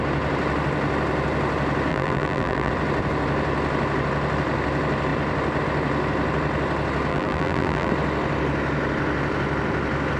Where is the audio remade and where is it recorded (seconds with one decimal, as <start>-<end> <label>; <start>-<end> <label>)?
0.0-1.9 recorded; 1.9-2.7 remade; 2.7-7.1 recorded; 7.1-7.9 remade; 7.9-10.2 recorded

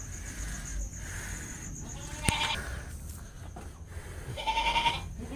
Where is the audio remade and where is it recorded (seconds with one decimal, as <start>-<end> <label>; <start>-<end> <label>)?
0.0-4.3 recorded; 4.3-4.9 remade; 4.9-5.4 recorded

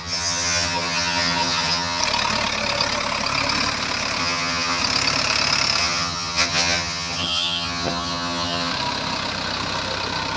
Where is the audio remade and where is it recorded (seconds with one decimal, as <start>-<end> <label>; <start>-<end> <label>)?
0.0-2.0 remade; 2.0-4.2 recorded; 4.2-4.8 remade; 4.8-5.8 recorded; 5.8-8.7 remade; 8.7-10.4 recorded